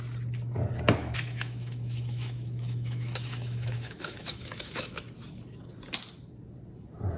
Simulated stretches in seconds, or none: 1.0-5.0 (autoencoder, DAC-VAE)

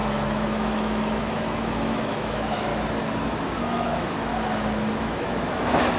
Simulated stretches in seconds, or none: 0.0-2.7 (autoencoder, DAC-VAE); 3.6-4.3; 5.0-6.0

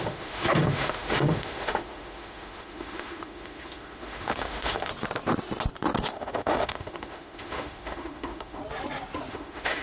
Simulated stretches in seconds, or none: 0.0-4.9 (autoencoder, DAC-VAE); 6.1-8.6; 9.3-9.8

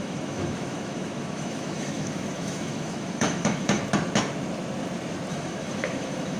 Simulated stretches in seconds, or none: 0.0-3.8 (autoencoder, DAC-VAE); 5.3-6.4

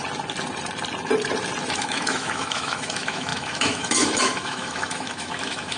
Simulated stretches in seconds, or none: 1.7-5.8 (autoencoder, DAC-VAE)

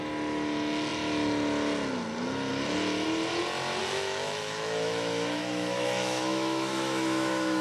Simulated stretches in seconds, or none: 3.8-7.6 (autoencoder, DAC-VAE)